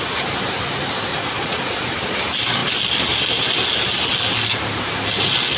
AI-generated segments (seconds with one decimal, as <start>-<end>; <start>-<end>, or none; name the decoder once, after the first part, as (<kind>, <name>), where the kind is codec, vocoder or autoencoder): 1.1-1.9 (vocoder, Vocos)